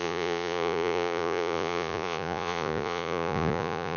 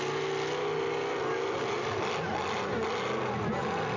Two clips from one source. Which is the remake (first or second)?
first